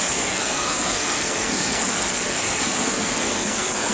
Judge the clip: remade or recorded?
remade